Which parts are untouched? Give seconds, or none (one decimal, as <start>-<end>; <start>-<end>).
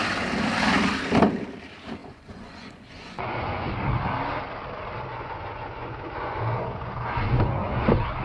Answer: 0.0-2.0; 3.7-5.1